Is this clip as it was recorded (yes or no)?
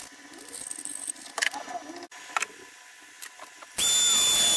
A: yes